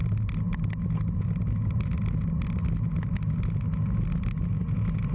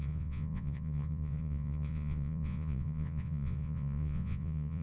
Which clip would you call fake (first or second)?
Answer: second